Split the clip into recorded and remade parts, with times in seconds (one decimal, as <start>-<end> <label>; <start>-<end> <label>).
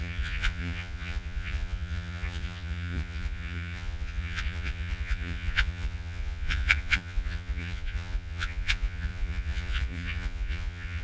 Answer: 0.0-11.0 remade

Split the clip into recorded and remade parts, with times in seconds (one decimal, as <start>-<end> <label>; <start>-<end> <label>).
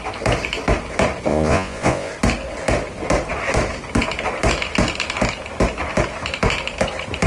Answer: 0.0-1.3 recorded; 1.3-2.1 remade; 2.1-7.3 recorded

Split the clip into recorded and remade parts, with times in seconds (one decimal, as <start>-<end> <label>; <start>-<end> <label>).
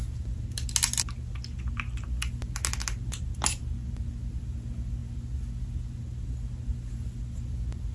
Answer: 0.0-7.9 recorded